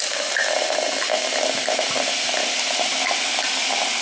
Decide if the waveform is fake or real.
real